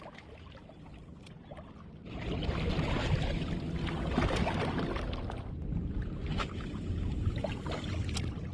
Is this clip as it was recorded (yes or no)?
yes